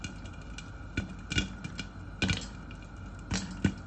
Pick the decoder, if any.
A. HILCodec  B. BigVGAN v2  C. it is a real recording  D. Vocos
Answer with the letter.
C